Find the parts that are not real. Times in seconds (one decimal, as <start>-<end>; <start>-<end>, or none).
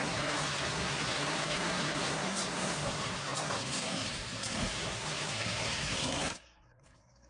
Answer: 0.0-7.3